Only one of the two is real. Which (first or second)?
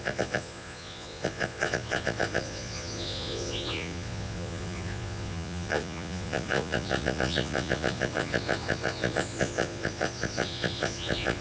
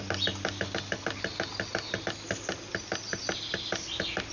second